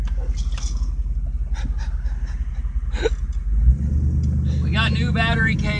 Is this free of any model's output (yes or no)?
yes